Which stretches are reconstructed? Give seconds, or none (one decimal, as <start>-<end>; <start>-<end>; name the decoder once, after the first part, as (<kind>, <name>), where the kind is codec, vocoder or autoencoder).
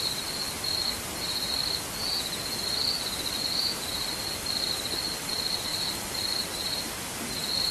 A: 5.7-6.8 (vocoder, BigVGAN v2)